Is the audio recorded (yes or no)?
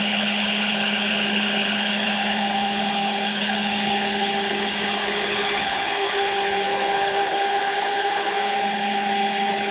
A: no